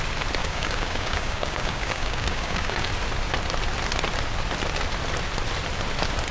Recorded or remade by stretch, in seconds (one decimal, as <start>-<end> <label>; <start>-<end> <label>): 0.0-0.4 recorded; 0.4-2.9 remade; 2.9-6.3 recorded